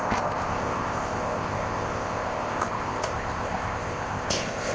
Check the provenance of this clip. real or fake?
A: fake